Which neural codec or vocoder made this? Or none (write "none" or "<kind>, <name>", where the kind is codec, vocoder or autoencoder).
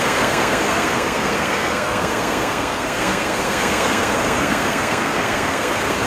codec, SNAC